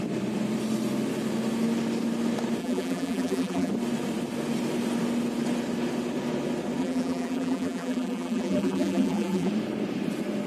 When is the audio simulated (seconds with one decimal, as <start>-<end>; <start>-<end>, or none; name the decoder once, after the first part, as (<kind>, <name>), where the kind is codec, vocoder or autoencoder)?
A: 2.6-3.7 (vocoder, BigVGAN v2); 6.8-9.5